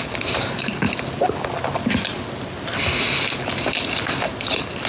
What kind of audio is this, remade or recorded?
recorded